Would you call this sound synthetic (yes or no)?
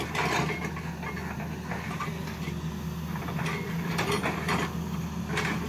no